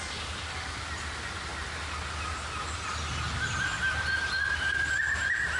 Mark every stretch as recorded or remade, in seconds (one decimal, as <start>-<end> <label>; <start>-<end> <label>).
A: 0.0-5.6 recorded